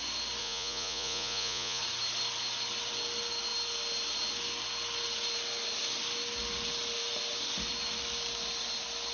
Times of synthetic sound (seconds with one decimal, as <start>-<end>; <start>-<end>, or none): 0.4-1.8